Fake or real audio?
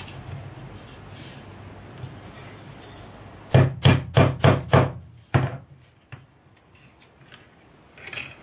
real